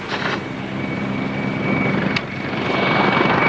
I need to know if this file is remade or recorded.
recorded